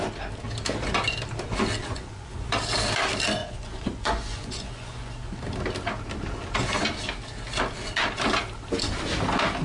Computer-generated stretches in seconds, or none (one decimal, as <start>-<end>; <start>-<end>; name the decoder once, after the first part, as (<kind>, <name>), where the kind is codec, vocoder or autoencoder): 1.8-2.5 (vocoder, Vocos); 3.4-5.4